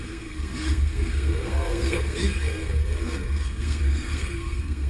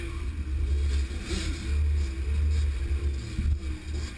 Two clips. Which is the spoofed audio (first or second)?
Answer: first